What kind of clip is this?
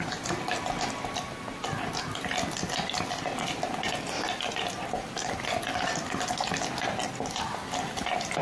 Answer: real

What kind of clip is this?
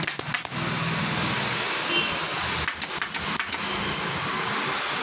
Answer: real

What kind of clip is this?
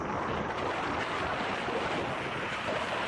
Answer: real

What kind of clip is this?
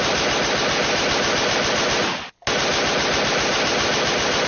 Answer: real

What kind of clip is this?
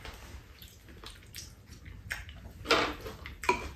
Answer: real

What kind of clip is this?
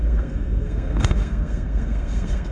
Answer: fake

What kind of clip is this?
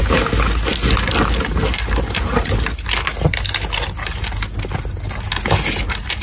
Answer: real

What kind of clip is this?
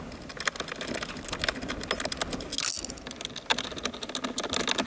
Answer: real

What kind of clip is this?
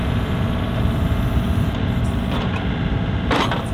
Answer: real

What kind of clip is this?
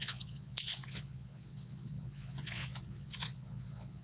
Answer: fake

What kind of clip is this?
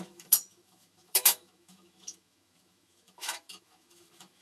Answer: fake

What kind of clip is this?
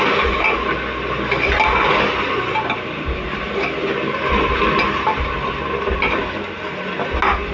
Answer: real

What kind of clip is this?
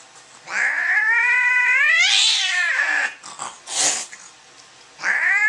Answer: real